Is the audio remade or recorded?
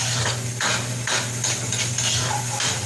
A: recorded